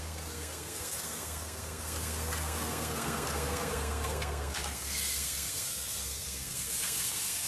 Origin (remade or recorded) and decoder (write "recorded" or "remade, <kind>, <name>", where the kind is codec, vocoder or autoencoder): remade, codec, SNAC